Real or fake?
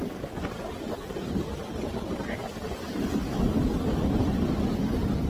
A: real